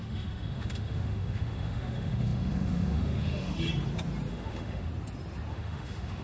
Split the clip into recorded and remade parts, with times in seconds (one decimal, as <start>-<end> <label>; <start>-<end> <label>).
0.0-3.7 remade; 3.7-4.3 recorded; 4.3-4.9 remade; 4.9-5.5 recorded; 5.5-6.2 remade